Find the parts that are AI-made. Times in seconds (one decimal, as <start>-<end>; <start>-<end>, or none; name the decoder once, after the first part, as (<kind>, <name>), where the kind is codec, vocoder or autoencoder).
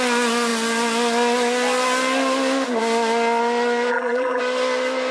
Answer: 3.9-4.4 (vocoder, BigVGAN v2)